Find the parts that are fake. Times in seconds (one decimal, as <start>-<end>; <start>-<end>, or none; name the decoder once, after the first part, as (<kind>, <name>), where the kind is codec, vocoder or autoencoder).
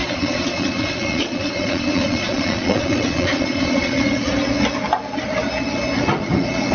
0.0-4.0 (vocoder, Vocos)